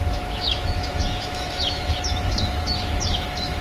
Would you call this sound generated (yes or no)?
yes